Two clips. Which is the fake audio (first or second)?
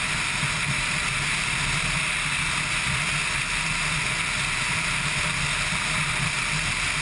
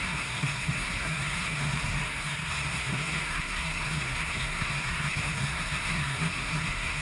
second